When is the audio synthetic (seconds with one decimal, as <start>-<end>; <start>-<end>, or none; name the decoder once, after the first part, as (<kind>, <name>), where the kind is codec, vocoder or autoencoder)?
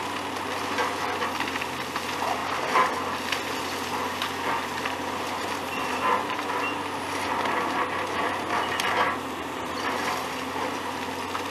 none